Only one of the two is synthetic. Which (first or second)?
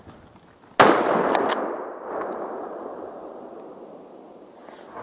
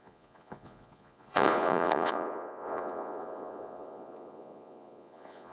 second